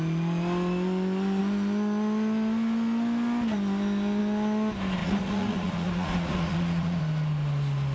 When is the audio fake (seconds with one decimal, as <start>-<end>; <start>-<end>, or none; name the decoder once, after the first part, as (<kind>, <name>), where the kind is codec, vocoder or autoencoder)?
5.0-7.0 (vocoder, Vocos)